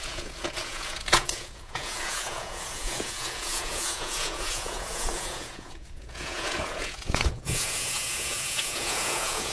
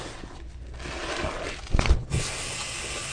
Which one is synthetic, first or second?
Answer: first